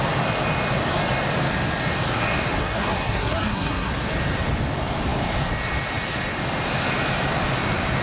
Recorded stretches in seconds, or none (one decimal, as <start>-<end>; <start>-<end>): 0.0-2.6; 3.9-8.0